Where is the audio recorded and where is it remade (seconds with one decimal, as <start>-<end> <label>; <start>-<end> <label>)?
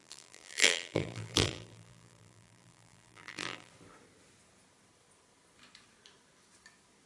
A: 0.0-3.7 remade; 3.7-7.1 recorded